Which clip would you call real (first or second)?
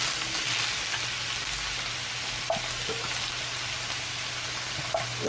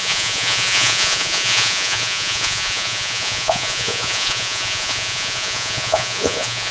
first